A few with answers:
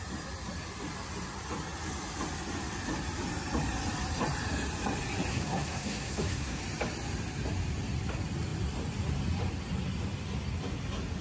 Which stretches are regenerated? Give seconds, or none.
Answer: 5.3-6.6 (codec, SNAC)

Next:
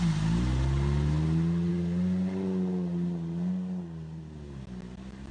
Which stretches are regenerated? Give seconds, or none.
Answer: none

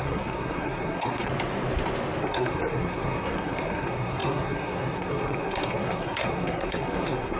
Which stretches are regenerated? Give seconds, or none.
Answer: 0.0-1.3 (codec, SNAC); 2.2-7.4

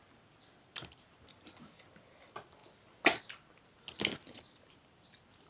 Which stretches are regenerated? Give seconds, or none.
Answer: none

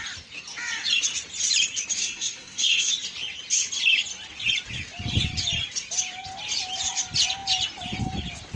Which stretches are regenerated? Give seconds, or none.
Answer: 2.0-2.9 (codec, SNAC)

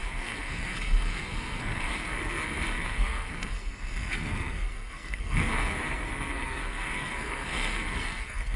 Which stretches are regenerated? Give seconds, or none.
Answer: 0.0-8.6 (codec, SNAC)

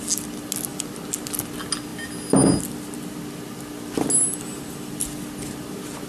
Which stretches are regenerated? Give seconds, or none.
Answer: none